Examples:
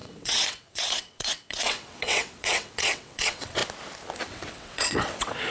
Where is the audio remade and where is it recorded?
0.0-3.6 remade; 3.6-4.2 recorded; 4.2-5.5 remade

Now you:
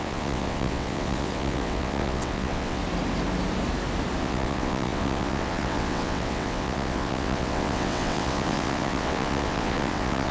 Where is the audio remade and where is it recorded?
0.0-2.8 remade; 2.8-4.2 recorded; 4.2-10.3 remade

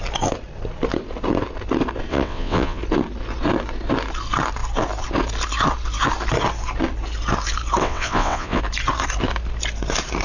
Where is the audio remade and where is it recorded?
0.0-2.1 recorded; 2.1-2.8 remade; 2.8-7.8 recorded; 7.8-8.6 remade; 8.6-10.2 recorded

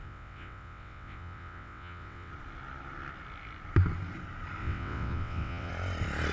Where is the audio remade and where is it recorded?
0.0-2.3 remade; 2.3-4.6 recorded; 4.6-5.7 remade; 5.7-6.3 recorded